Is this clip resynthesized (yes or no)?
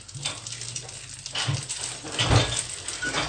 no